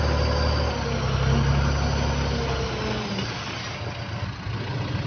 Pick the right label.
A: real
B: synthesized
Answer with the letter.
A